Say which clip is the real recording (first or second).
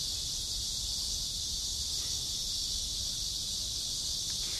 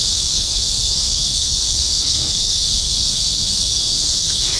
first